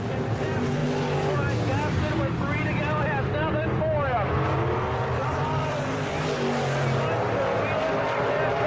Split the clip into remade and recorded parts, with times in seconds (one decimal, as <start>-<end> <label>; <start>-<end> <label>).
0.0-8.7 recorded